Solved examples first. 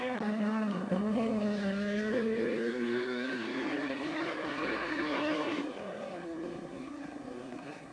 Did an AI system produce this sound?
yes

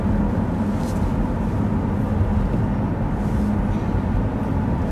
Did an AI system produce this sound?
no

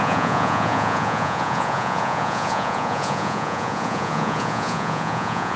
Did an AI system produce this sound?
yes